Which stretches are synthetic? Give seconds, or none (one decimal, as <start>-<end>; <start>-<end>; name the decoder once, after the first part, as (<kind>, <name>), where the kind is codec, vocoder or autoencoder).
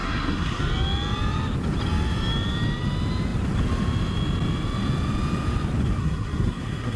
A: 0.0-0.6 (codec, SNAC); 6.0-7.0